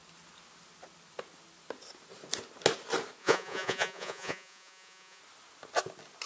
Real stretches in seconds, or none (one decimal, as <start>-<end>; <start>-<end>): 0.0-3.2; 5.2-6.3